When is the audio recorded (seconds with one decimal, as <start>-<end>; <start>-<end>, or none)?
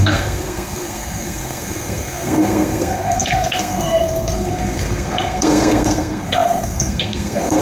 none